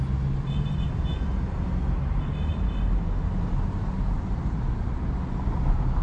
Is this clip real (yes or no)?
yes